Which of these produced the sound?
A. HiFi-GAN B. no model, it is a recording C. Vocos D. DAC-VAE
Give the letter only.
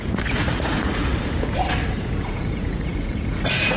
C